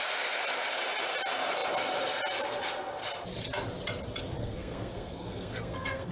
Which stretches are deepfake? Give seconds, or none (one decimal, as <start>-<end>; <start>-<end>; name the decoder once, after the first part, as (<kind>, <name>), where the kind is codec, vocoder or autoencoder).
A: 4.4-6.1 (codec, SNAC)